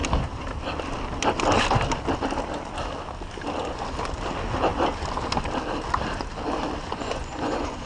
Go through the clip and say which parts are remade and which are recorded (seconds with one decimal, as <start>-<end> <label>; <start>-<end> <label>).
0.0-6.9 recorded; 6.9-7.9 remade